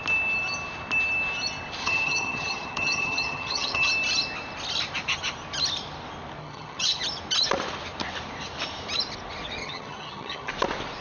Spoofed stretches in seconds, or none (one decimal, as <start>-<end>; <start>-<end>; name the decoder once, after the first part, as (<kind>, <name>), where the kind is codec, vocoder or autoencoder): 1.8-3.9 (vocoder, HiFi-GAN); 6.4-7.0; 9.6-10.5